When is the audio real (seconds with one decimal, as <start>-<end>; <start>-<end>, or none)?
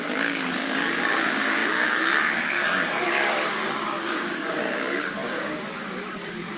none